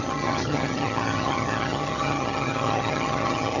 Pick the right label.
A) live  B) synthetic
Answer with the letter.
B